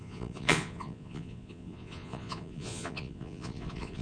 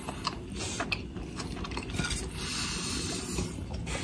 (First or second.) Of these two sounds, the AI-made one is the first